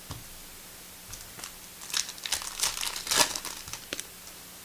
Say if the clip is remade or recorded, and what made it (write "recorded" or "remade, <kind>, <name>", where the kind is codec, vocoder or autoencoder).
recorded